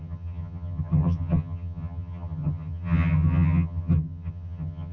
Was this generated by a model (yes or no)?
yes